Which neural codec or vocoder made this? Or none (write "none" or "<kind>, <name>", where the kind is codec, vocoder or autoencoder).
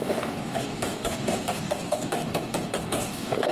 codec, DAC